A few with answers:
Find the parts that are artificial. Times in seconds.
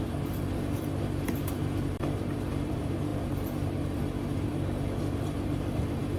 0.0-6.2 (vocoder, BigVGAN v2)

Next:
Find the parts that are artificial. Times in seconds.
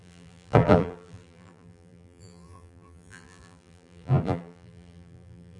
0.0-5.6 (vocoder, BigVGAN v2)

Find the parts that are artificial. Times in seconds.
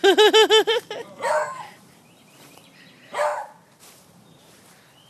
0.7-3.3 (vocoder, BigVGAN v2); 3.8-5.1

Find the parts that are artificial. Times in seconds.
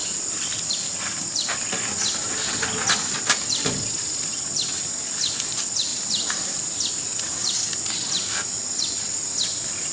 5.9-6.9 (vocoder, BigVGAN v2)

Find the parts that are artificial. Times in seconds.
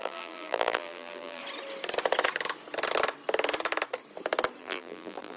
0.0-1.4 (vocoder, BigVGAN v2); 4.6-5.4